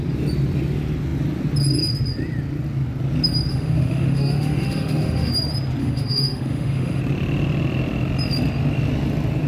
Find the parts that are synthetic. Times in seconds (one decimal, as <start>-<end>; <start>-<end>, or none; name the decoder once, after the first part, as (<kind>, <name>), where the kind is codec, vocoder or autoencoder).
3.5-5.3 (autoencoder, DAC-VAE); 5.8-7.0